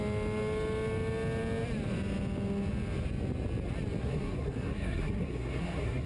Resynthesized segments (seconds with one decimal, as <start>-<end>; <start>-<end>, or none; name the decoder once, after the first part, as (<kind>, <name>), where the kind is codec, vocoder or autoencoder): 4.0-6.1 (codec, SNAC)